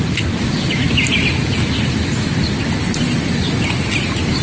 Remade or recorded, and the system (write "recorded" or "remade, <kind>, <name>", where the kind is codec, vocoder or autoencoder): recorded